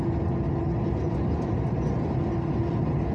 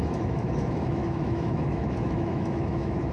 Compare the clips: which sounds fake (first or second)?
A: second